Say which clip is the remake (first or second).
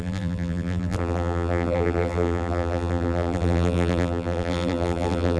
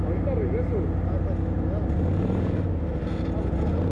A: first